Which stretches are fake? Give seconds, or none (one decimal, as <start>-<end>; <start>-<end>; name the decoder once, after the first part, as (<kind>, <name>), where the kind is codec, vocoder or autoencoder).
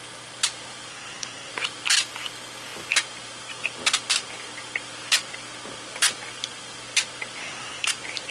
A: 0.9-1.5 (codec, SNAC); 7.4-7.9